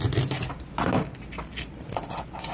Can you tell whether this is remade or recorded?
recorded